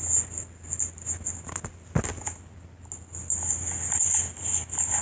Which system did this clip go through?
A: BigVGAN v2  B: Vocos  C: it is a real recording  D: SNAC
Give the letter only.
C